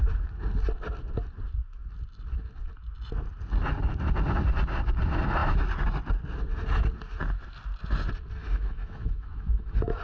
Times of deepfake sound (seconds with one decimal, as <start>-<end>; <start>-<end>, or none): 8.4-10.0